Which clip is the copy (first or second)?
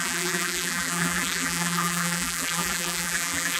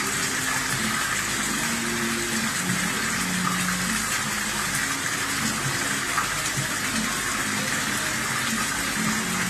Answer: first